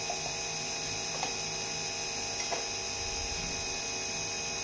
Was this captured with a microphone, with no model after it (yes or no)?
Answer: yes